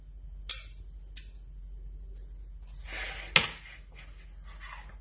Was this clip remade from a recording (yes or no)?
no